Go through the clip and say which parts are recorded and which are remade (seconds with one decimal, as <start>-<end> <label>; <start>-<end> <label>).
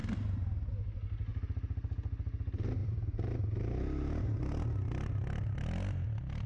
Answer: 0.0-2.8 recorded; 2.8-3.4 remade; 3.4-6.5 recorded